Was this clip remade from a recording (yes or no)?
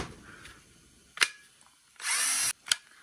no